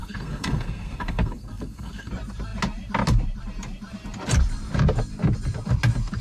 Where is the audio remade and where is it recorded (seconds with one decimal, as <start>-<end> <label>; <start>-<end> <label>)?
0.0-2.1 remade; 2.1-6.2 recorded